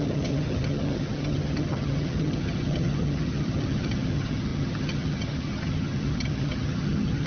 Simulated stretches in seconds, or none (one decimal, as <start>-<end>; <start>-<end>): 0.0-7.3